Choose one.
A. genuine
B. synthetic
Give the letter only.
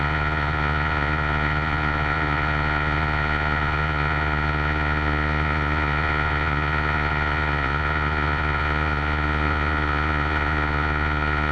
B